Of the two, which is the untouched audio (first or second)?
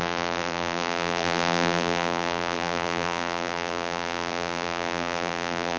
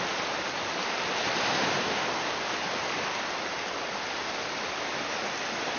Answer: second